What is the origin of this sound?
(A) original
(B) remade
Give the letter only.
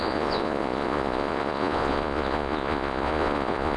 B